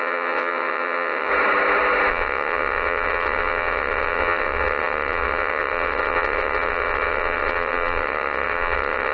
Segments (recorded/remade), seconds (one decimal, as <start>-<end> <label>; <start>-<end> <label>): 0.0-1.3 remade; 1.3-2.1 recorded; 2.1-9.1 remade